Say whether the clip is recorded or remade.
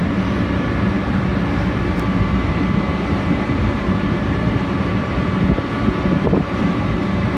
remade